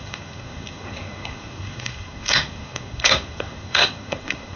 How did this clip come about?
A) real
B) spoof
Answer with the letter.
B